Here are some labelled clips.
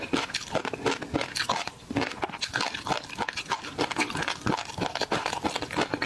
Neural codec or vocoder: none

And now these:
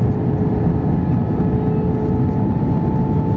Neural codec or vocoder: none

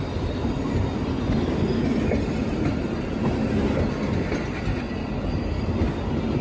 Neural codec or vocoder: none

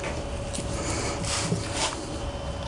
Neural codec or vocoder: none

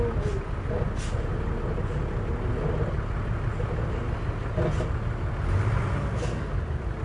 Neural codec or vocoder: none